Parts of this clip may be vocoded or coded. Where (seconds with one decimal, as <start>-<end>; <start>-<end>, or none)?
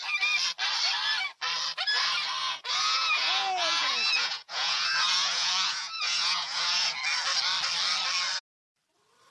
2.4-7.0